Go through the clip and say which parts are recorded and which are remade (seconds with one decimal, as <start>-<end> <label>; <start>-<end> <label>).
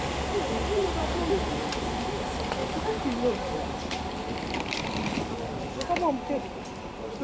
0.0-0.8 recorded; 0.8-1.3 remade; 1.3-7.2 recorded